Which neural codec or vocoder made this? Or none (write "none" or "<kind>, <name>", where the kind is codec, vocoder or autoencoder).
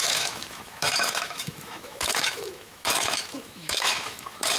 autoencoder, DAC-VAE